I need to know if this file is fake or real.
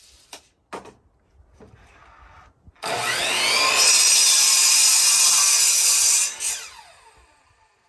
real